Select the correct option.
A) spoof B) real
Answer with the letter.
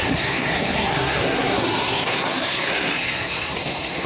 A